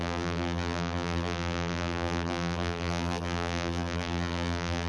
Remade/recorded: remade